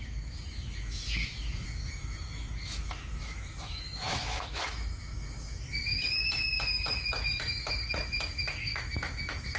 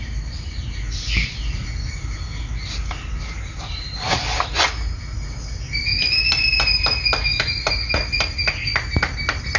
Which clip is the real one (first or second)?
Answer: second